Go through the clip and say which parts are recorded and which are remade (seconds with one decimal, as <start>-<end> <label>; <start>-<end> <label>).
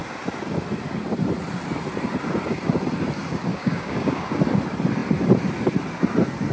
0.0-3.5 recorded; 3.5-4.4 remade; 4.4-6.5 recorded